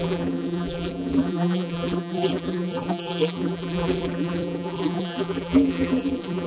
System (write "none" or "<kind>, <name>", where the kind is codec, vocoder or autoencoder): vocoder, BigVGAN v2